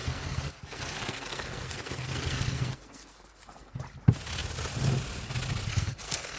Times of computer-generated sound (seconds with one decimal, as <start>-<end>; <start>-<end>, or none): 0.0-3.8; 5.7-6.4